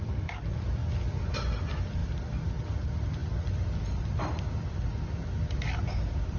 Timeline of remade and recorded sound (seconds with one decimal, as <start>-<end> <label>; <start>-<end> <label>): 0.0-0.8 remade; 0.8-1.6 recorded; 1.6-2.0 remade; 2.0-2.7 recorded; 2.7-6.4 remade